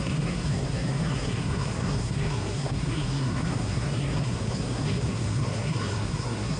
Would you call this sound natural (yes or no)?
no